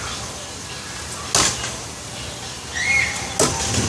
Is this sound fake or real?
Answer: real